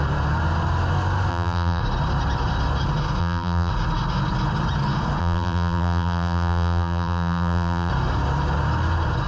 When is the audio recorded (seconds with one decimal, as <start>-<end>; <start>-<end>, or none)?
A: 0.0-1.3; 1.8-3.2; 3.7-5.2; 7.9-9.3